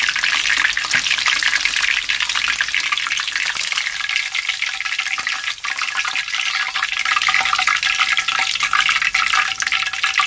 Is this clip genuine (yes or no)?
yes